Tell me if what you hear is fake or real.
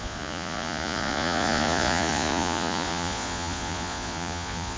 fake